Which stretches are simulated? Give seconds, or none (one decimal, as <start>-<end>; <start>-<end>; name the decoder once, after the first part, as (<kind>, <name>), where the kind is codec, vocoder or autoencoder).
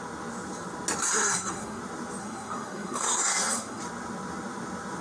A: 1.1-1.8 (codec, SNAC); 2.2-3.8